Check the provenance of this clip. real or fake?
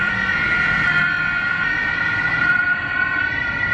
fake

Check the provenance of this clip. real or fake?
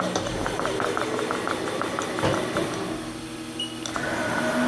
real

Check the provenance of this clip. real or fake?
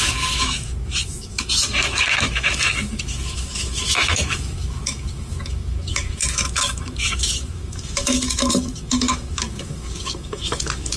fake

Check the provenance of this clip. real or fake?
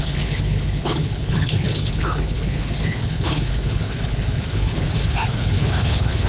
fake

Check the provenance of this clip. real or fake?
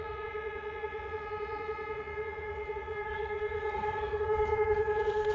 fake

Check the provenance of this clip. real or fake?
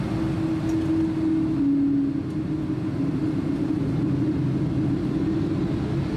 real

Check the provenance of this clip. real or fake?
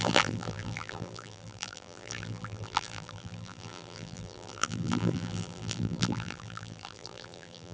fake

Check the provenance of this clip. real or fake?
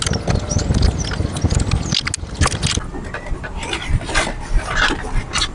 real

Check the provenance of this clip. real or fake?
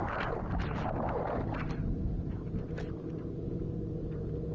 real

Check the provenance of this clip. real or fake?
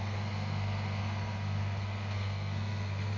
fake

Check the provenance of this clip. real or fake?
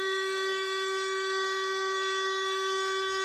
fake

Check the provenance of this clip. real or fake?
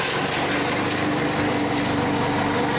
real